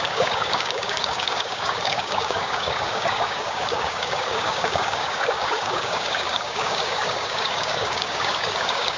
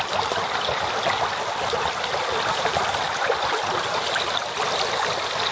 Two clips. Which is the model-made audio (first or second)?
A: first